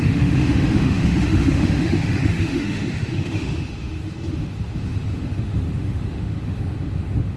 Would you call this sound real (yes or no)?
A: no